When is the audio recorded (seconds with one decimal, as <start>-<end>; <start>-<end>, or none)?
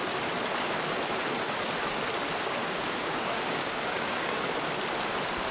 0.0-2.6; 4.5-5.5